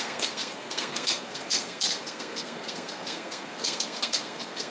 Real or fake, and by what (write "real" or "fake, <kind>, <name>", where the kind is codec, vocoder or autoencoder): fake, codec, SNAC